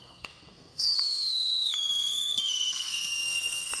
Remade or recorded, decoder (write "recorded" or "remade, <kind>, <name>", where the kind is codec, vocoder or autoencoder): remade, codec, SNAC